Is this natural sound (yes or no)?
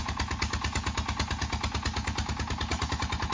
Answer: yes